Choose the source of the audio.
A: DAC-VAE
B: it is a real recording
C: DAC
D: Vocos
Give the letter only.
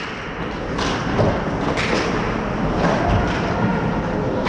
B